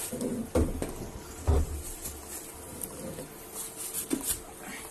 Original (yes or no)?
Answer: yes